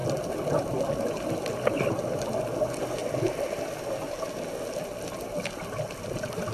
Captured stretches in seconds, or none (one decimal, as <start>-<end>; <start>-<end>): 0.0-6.5